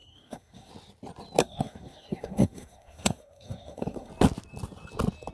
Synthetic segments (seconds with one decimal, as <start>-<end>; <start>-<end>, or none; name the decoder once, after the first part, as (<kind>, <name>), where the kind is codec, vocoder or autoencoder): 0.0-0.7 (codec, SNAC); 1.4-4.1